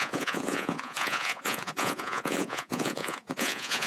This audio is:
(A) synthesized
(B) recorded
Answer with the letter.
A